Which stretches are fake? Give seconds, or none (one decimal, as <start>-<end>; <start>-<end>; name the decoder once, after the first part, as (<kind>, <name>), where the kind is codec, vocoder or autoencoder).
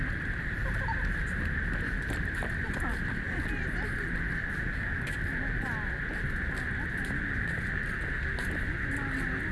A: 4.7-5.2 (codec, DAC)